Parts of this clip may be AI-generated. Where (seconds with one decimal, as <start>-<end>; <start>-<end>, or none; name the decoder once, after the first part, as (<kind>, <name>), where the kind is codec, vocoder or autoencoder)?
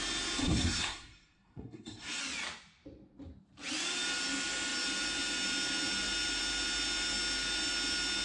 0.4-2.2 (codec, SNAC)